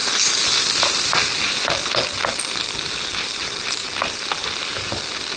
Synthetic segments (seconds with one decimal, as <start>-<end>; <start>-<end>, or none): none